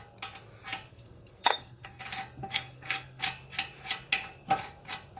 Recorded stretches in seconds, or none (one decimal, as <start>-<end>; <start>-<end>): 0.0-0.9; 2.0-2.4; 3.2-5.2